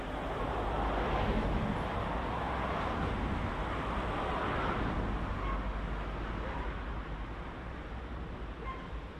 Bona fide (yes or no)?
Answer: yes